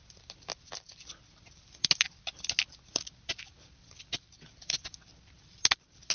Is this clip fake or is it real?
real